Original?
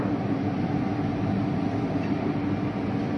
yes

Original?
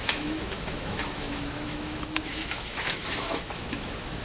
no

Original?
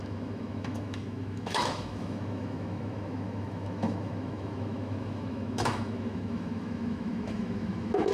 no